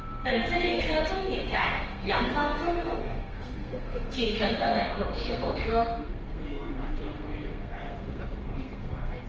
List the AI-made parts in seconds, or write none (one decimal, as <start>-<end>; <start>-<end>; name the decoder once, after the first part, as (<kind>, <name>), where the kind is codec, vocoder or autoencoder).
0.0-9.3 (codec, SNAC)